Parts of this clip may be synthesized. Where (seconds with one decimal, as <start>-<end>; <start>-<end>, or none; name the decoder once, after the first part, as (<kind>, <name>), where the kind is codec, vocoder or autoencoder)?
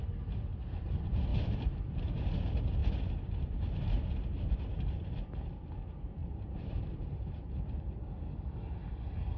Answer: 1.3-2.2 (vocoder, BigVGAN v2); 2.8-3.7; 6.2-7.5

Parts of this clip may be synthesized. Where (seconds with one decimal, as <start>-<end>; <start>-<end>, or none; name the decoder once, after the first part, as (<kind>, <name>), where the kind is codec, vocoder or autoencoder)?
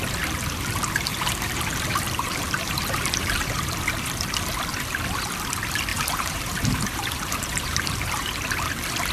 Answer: 1.1-3.4 (vocoder, BigVGAN v2); 5.9-8.3